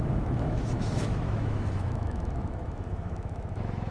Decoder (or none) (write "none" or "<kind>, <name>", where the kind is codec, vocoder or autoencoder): autoencoder, DAC-VAE